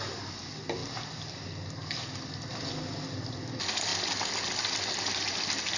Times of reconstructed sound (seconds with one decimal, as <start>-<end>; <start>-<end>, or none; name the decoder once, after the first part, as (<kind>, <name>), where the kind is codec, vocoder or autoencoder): none